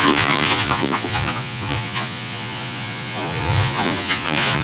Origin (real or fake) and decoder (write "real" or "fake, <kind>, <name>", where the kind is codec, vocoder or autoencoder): fake, vocoder, Vocos